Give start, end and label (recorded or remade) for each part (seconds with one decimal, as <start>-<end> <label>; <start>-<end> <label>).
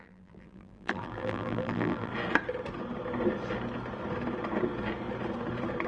0.0-2.1 remade; 2.1-5.9 recorded